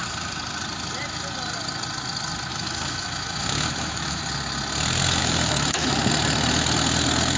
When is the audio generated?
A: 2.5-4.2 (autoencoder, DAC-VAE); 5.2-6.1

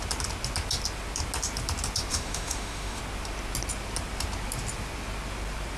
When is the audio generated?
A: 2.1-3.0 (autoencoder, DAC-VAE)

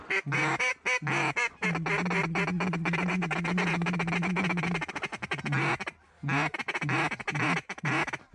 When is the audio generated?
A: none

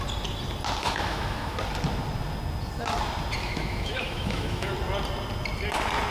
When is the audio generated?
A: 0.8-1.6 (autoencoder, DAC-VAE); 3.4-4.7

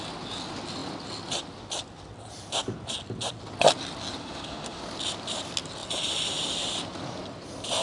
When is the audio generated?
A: 4.2-4.8 (autoencoder, DAC-VAE)

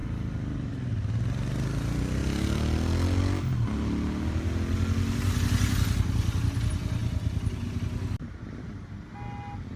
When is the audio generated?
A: none